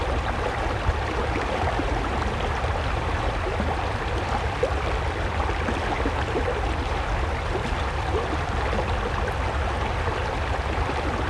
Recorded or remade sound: recorded